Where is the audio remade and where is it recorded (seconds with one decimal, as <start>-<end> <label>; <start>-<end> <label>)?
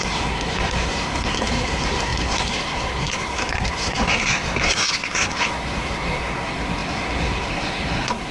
0.0-8.3 remade